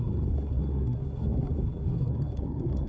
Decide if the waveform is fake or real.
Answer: fake